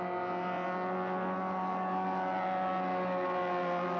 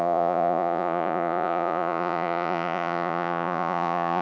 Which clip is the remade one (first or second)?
second